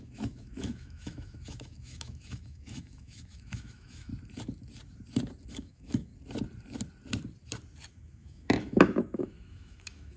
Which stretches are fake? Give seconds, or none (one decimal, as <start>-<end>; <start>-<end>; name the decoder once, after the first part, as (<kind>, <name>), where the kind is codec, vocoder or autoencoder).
0.0-4.1 (autoencoder, DAC-VAE); 5.5-6.1; 7.9-10.2